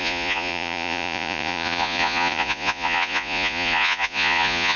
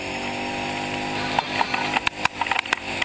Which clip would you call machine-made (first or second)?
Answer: first